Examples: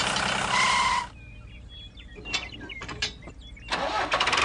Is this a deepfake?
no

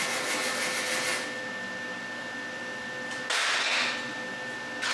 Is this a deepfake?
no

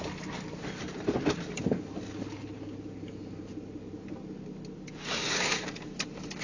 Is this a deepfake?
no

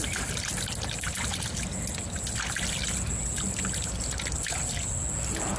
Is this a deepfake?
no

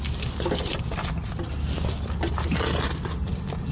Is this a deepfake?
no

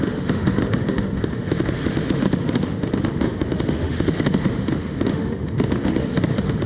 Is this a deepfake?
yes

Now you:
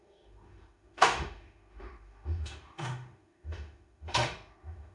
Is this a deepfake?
yes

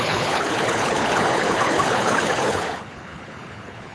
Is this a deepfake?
yes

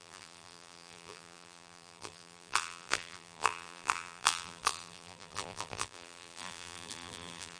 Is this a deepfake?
yes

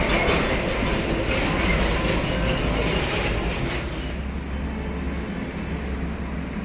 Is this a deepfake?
no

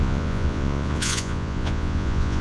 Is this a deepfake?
yes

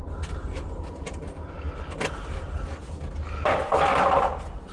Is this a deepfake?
no